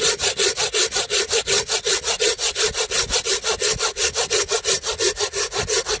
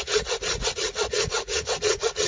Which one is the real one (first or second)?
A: first